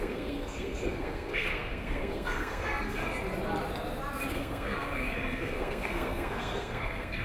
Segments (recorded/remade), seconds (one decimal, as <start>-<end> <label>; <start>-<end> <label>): 0.0-3.0 remade; 3.0-4.3 recorded; 4.3-7.2 remade